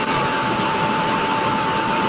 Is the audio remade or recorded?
remade